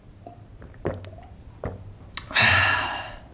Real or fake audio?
real